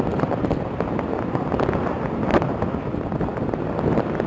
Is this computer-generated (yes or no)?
no